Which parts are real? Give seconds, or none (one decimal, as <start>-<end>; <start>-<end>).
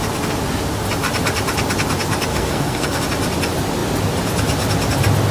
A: 0.0-2.3; 3.0-5.3